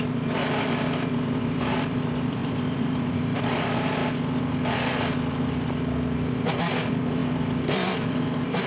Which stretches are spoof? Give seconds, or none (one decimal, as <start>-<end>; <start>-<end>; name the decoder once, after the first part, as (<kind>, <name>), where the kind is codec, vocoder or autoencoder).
0.0-4.0 (vocoder, BigVGAN v2); 6.6-8.7

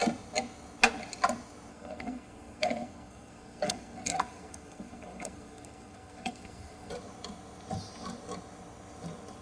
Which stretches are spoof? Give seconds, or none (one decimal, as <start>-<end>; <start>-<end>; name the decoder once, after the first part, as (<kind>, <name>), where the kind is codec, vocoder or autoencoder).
1.7-6.9 (codec, SNAC)

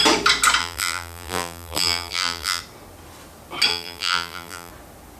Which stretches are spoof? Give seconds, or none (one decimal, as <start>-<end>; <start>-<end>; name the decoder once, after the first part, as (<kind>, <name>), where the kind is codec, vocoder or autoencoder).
0.6-2.6 (vocoder, BigVGAN v2); 3.7-4.7

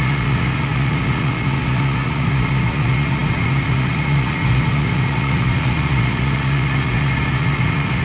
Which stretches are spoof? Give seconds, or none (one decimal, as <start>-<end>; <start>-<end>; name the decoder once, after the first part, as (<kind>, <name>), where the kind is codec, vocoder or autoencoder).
0.0-8.0 (vocoder, Vocos)

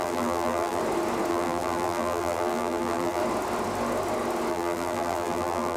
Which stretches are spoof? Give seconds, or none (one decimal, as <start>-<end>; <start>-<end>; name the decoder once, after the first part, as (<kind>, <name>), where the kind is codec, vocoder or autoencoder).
0.0-0.8 (vocoder, BigVGAN v2); 1.3-3.2; 4.5-5.8